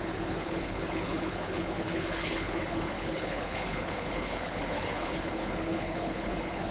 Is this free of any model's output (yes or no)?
no